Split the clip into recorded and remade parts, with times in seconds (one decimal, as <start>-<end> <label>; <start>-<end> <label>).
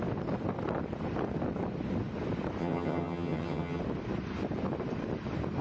0.0-2.6 recorded; 2.6-3.8 remade; 3.8-5.6 recorded